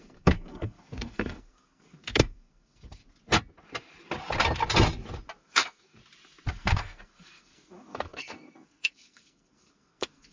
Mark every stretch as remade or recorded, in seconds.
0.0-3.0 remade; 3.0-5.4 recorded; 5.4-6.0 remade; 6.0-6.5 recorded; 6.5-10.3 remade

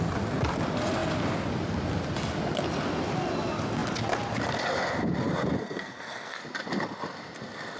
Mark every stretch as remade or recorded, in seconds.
0.0-5.6 recorded; 5.6-6.4 remade; 6.4-7.8 recorded

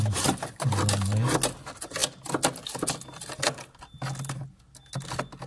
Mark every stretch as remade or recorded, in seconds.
0.0-5.5 recorded

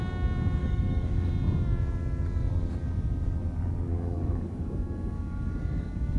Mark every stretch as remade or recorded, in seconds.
0.0-0.6 recorded; 0.6-1.3 remade; 1.3-3.9 recorded; 3.9-6.2 remade